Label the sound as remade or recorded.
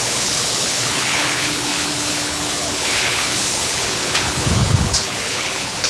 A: remade